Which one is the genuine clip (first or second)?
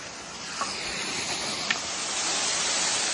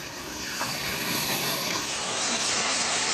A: first